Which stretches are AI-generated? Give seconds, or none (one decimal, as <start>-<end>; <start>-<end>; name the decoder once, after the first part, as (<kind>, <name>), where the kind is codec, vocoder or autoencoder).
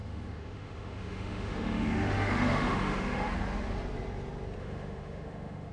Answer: 0.0-3.3 (autoencoder, DAC-VAE); 4.6-5.7